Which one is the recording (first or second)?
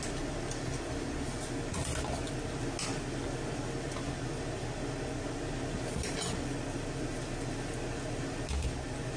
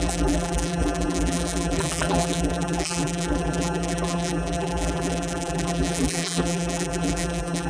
first